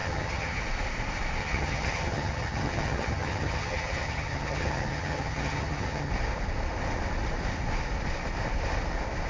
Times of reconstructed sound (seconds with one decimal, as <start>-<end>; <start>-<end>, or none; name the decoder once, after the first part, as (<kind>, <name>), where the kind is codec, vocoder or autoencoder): 0.0-0.6 (vocoder, HiFi-GAN); 1.4-6.1